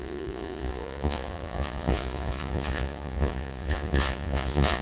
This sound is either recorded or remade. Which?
remade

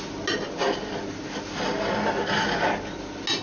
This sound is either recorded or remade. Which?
recorded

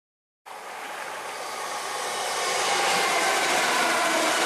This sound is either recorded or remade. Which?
recorded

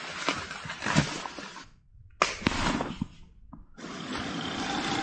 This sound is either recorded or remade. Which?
recorded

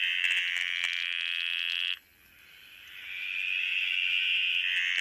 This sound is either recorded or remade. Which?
recorded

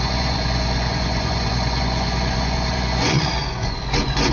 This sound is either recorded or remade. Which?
remade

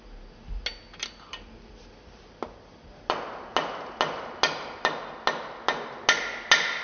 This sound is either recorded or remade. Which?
recorded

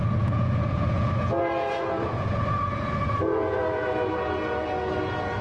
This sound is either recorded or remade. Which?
remade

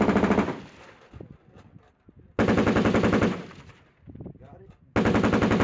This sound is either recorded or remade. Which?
recorded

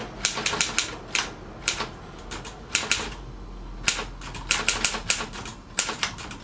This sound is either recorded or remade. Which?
recorded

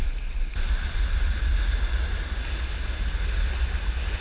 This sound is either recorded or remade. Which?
recorded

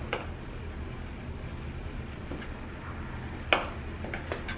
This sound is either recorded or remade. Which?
recorded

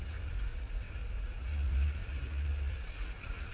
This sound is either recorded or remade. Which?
remade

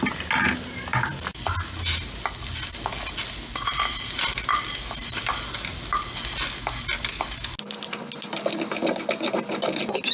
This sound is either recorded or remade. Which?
recorded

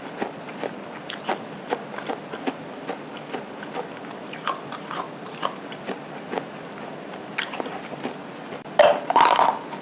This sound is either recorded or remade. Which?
recorded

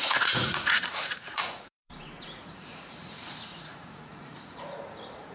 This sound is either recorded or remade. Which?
remade